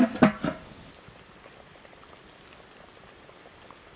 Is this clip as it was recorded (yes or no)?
yes